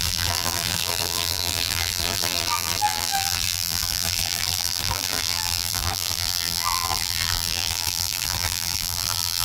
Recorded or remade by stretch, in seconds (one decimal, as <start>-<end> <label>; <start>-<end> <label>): 0.0-9.4 remade